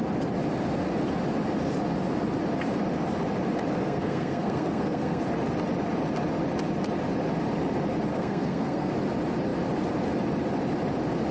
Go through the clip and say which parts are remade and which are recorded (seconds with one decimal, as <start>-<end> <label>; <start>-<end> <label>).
0.0-3.8 recorded; 3.8-5.2 remade; 5.2-8.1 recorded; 8.1-8.9 remade; 8.9-11.3 recorded